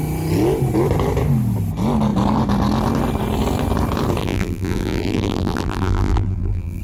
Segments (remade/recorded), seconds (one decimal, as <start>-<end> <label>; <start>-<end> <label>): 0.0-4.2 recorded; 4.2-6.8 remade